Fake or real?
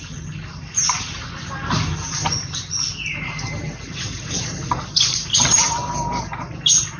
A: real